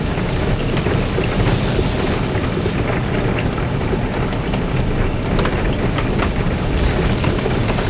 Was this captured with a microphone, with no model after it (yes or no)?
no